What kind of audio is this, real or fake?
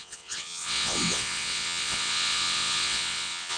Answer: fake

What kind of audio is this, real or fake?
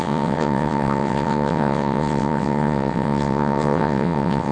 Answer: fake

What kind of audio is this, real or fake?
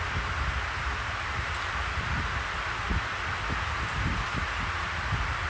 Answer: real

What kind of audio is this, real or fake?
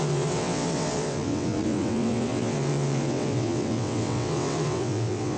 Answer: fake